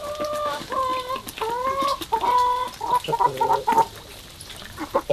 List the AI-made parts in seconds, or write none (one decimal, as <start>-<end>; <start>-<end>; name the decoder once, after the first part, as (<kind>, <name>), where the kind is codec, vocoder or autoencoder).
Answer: none